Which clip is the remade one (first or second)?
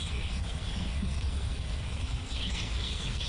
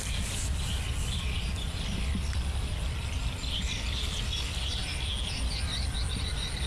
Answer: first